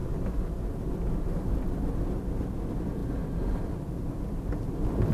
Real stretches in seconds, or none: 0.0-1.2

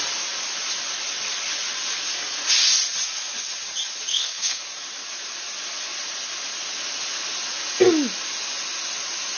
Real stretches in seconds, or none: 0.0-4.1; 4.6-9.4

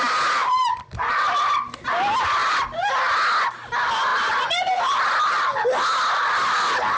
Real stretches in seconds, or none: 0.0-0.4; 1.9-4.1; 5.1-7.0

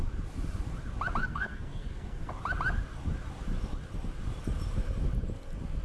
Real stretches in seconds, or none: 0.0-1.2; 2.3-5.8